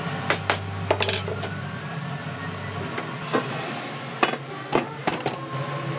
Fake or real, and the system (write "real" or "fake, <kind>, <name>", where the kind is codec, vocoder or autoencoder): real